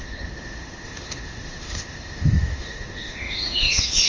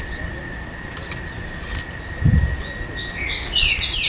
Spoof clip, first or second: first